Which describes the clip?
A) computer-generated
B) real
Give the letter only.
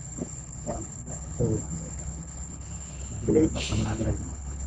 A